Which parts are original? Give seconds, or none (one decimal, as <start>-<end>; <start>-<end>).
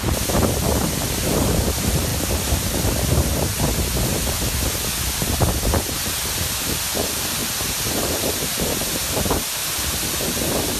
2.1-6.6